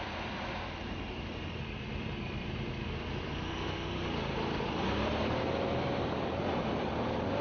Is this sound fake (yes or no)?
yes